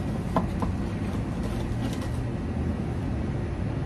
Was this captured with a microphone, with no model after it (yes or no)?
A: yes